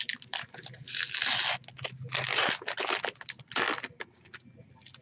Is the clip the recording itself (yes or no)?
yes